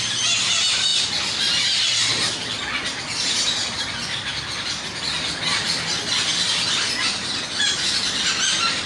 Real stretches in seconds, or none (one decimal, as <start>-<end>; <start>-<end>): 0.0-8.9